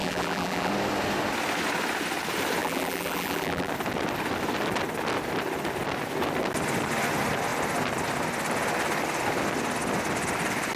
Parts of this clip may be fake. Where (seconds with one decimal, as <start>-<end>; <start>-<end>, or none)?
0.0-0.7; 2.6-3.7